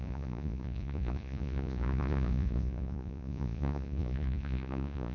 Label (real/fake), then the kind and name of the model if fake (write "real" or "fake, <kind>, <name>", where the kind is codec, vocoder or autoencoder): fake, vocoder, Vocos